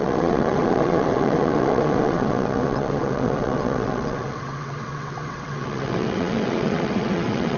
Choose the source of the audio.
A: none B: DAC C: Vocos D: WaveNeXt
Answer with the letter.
D